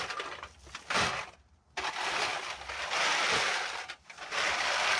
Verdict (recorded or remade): recorded